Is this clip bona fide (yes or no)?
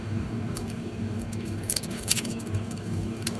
no